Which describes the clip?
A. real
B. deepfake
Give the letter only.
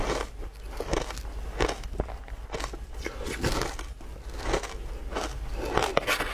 A